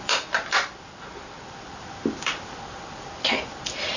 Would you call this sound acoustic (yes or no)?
yes